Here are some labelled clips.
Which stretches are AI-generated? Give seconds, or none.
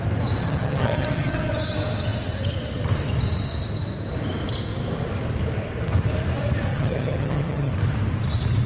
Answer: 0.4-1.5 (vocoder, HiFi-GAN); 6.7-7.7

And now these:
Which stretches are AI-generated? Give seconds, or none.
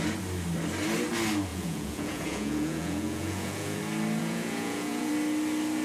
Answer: 1.5-3.8 (vocoder, Vocos); 4.2-5.1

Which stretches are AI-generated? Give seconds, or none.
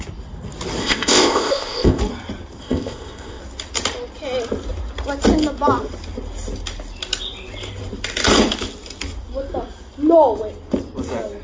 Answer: 0.8-2.0 (codec, ZipCodec); 2.6-3.4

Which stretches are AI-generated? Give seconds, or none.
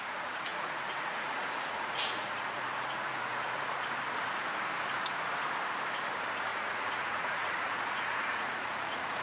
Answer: 0.5-3.8 (vocoder, Vocos); 6.5-9.2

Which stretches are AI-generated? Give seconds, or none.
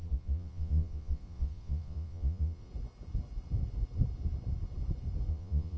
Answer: 0.0-2.7 (vocoder, Vocos); 5.3-5.8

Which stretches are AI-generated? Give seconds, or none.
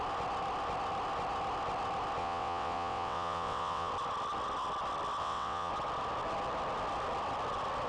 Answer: 2.2-3.9 (vocoder, WaveNeXt); 5.2-5.7